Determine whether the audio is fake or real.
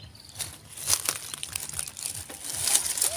real